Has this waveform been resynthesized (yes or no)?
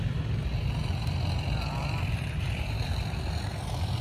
no